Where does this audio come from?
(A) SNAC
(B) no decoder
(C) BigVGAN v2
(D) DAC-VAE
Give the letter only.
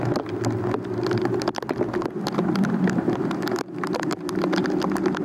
B